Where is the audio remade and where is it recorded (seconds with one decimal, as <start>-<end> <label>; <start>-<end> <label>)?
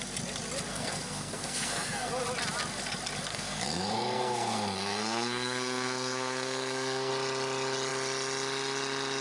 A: 0.0-0.7 recorded; 0.7-2.1 remade; 2.1-3.3 recorded; 3.3-7.1 remade; 7.1-9.2 recorded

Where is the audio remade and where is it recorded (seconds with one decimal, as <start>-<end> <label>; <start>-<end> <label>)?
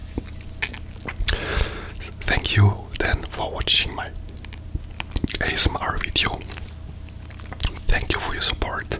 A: 0.0-9.0 recorded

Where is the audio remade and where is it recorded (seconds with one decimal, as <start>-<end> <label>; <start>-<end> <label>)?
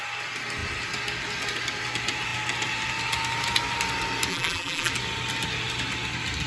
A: 0.0-4.3 recorded; 4.3-4.9 remade; 4.9-6.5 recorded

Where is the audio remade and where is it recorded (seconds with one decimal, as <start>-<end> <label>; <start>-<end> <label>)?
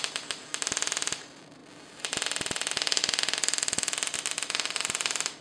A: 0.0-5.4 recorded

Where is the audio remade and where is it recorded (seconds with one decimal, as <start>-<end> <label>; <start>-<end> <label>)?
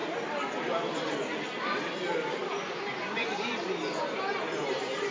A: 0.0-2.4 recorded; 2.4-3.8 remade; 3.8-5.1 recorded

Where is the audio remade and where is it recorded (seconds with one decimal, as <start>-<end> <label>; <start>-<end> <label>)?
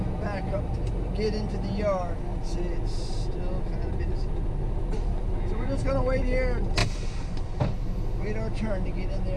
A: 0.0-9.4 recorded